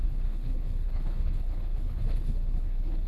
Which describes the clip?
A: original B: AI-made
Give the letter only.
B